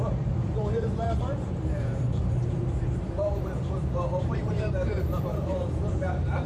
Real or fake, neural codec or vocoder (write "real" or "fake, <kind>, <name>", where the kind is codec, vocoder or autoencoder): fake, vocoder, BigVGAN v2